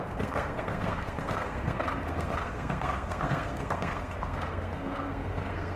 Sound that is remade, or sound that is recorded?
remade